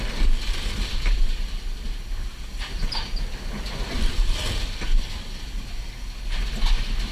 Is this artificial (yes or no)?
no